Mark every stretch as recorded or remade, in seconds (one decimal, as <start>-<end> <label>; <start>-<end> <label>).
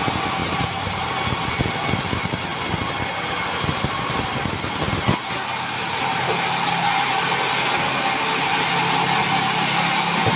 0.0-0.4 recorded; 0.4-1.1 remade; 1.1-10.4 recorded